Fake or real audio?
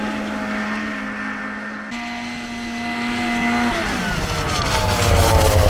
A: real